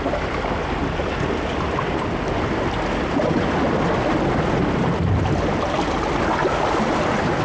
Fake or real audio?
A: real